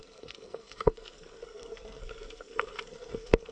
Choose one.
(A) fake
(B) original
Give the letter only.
A